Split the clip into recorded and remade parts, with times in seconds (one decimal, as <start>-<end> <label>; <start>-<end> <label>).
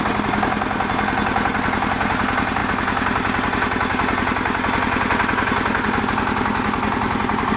0.0-7.6 recorded